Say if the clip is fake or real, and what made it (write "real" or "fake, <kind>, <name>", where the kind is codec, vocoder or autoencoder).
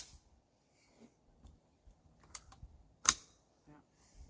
fake, vocoder, BigVGAN v2